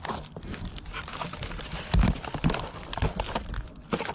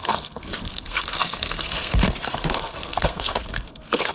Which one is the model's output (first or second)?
second